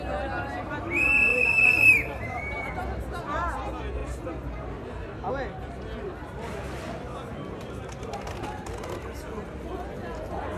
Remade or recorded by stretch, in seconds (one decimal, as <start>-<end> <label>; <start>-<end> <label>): 0.0-1.3 recorded; 1.3-2.4 remade; 2.4-10.6 recorded